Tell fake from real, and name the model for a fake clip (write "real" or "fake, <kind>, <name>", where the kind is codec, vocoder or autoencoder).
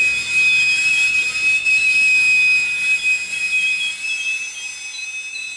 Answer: real